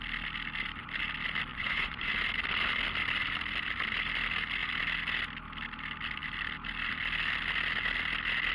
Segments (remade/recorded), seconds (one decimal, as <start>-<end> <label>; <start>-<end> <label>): 0.0-1.5 recorded; 1.5-2.1 remade; 2.1-8.5 recorded